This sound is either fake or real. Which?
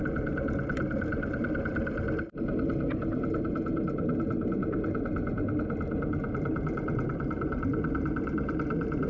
real